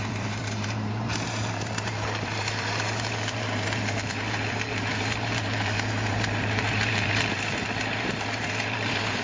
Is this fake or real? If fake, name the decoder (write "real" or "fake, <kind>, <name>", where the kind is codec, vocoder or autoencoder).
fake, vocoder, BigVGAN v2